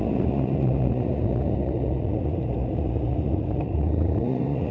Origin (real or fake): fake